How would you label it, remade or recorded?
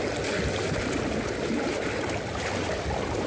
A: recorded